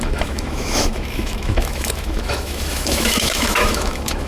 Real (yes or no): no